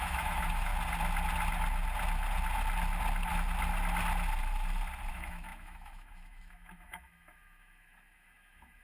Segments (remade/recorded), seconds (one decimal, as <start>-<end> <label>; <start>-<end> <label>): 0.0-0.7 remade; 0.7-5.1 recorded; 5.1-8.8 remade